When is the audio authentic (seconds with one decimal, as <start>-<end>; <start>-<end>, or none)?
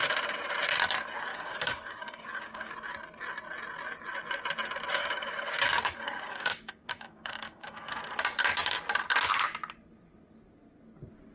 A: 0.0-1.3; 2.7-5.0; 8.0-11.3